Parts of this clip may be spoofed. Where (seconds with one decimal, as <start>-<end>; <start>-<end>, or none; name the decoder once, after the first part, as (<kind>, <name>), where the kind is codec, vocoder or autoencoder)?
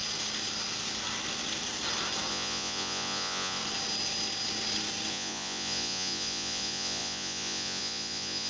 2.3-3.6 (vocoder, Vocos); 5.1-8.5